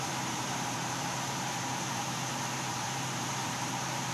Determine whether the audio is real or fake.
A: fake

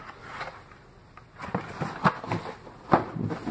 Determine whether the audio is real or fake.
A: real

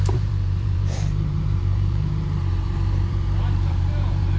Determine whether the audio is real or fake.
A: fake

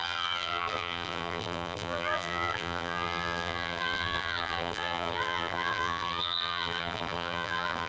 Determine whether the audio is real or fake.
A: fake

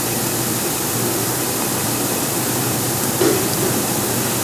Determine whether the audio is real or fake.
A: fake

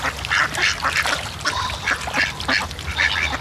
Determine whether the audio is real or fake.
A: real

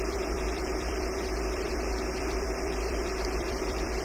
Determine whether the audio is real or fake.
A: fake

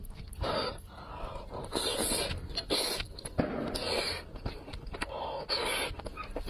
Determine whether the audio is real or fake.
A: real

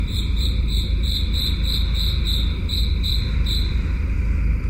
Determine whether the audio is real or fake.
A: fake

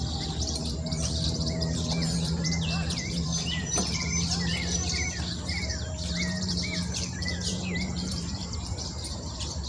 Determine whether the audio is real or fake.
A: fake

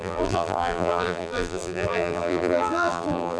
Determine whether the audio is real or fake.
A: fake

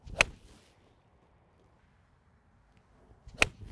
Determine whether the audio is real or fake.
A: real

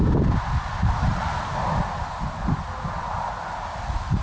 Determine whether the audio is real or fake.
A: real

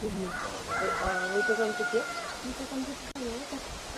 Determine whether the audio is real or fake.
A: fake